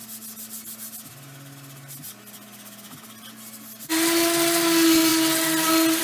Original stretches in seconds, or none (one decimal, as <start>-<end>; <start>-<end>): 0.0-6.0